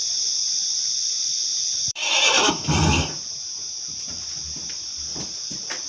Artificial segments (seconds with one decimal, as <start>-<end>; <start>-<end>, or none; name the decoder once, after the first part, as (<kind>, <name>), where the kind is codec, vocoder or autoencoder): 1.0-2.9 (vocoder, BigVGAN v2); 3.9-5.9